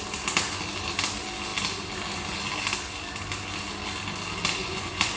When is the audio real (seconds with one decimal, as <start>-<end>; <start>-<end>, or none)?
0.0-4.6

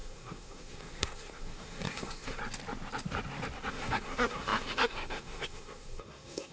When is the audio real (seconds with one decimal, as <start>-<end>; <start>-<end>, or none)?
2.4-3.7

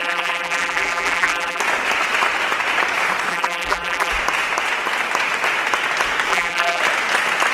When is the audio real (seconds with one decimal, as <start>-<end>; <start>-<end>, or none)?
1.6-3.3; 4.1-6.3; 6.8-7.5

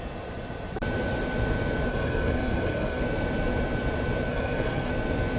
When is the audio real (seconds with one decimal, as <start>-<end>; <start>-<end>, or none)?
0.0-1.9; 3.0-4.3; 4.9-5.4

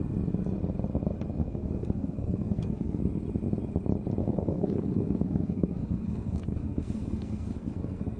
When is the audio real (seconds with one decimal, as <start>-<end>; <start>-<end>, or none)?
0.0-1.4; 3.0-4.2

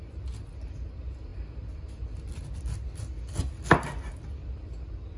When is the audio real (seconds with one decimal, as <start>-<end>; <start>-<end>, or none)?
0.0-5.2

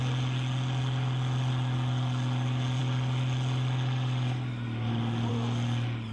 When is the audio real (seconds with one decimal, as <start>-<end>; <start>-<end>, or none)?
0.0-6.1

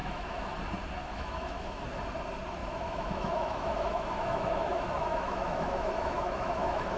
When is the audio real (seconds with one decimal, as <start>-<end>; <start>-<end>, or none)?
0.5-1.0; 1.8-2.6